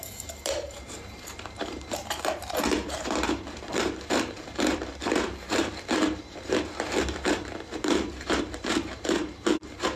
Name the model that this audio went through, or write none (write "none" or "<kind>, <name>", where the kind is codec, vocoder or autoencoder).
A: vocoder, BigVGAN v2